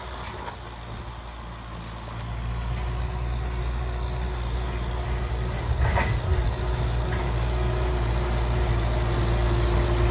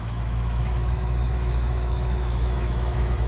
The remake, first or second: second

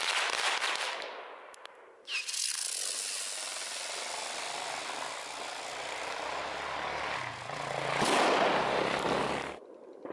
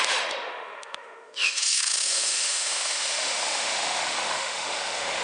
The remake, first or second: second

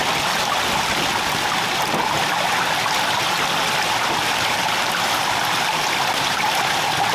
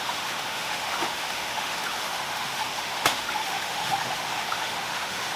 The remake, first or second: second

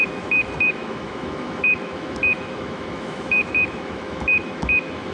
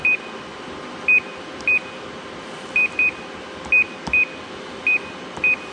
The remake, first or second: first